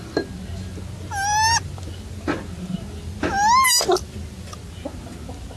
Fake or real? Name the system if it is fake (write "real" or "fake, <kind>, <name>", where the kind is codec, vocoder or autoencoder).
real